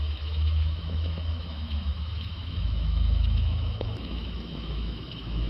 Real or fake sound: fake